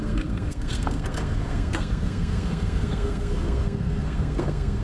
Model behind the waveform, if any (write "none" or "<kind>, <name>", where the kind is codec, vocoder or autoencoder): codec, SNAC